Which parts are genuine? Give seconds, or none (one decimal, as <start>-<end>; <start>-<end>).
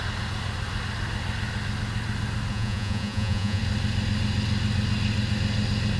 0.0-2.5; 3.6-6.0